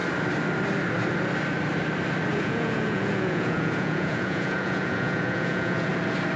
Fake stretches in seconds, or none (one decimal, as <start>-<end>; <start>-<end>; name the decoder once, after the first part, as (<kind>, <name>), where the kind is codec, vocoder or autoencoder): 2.3-5.9 (vocoder, Vocos)